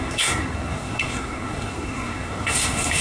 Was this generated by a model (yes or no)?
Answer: yes